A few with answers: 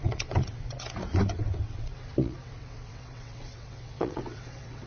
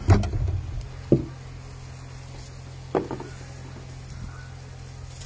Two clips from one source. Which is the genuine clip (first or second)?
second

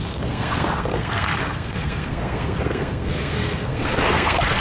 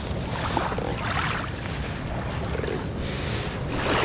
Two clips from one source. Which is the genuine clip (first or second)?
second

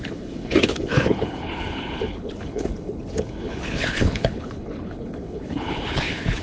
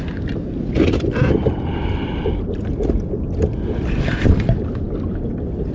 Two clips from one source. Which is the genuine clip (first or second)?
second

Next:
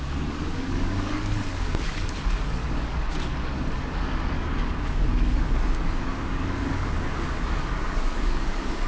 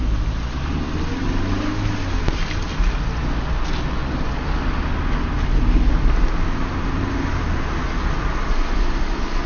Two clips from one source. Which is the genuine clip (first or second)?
second